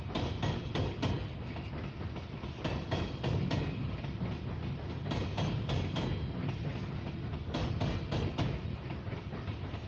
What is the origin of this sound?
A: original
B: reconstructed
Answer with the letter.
A